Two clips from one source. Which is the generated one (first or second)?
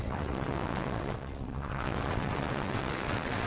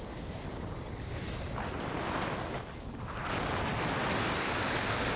first